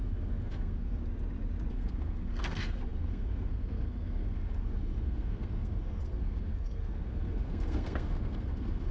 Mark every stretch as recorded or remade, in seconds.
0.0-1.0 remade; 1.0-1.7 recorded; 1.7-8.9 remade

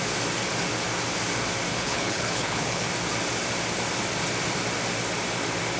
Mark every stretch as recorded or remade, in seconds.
0.0-1.7 recorded; 1.7-2.8 remade; 2.8-5.8 recorded

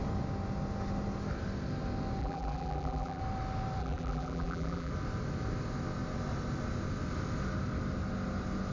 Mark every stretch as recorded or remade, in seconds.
0.0-2.2 recorded; 2.2-3.2 remade; 3.2-3.8 recorded; 3.8-4.9 remade; 4.9-8.7 recorded

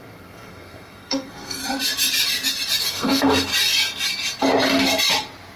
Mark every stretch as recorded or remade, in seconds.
0.0-1.6 remade; 1.6-2.8 recorded; 2.8-3.5 remade; 3.5-5.6 recorded

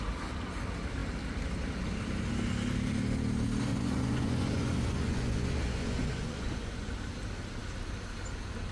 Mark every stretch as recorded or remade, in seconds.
0.0-3.7 recorded; 3.7-6.9 remade; 6.9-8.7 recorded

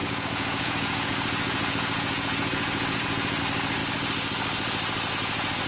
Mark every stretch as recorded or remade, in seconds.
0.0-3.4 remade; 3.4-5.7 recorded

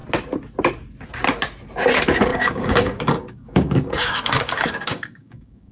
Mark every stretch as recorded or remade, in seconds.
0.0-2.3 recorded; 2.3-5.7 remade

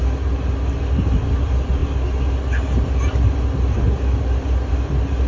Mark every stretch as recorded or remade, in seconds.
0.0-5.3 recorded